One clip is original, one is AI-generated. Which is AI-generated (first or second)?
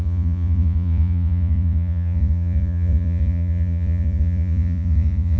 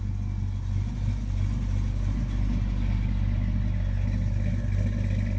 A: first